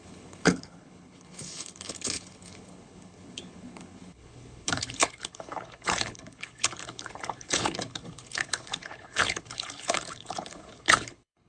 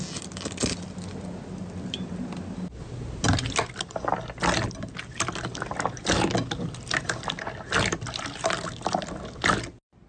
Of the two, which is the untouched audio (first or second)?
second